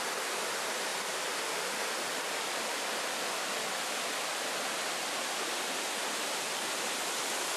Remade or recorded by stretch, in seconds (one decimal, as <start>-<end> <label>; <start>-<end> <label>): 0.0-0.9 recorded; 0.9-5.5 remade; 5.5-7.6 recorded